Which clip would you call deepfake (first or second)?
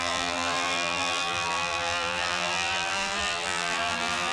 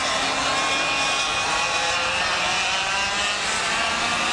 first